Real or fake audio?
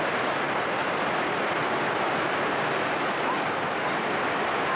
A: real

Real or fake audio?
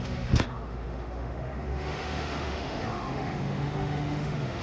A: fake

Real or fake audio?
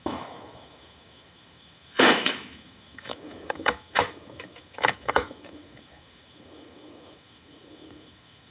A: fake